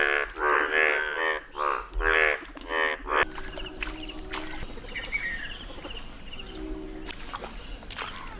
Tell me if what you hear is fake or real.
real